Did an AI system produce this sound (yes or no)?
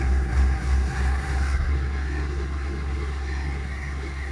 yes